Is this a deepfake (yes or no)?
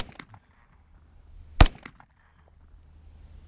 no